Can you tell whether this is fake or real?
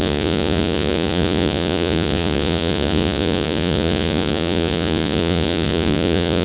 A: fake